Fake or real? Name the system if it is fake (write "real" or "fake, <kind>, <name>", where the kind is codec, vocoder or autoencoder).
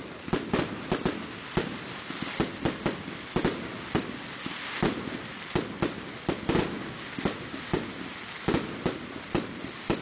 real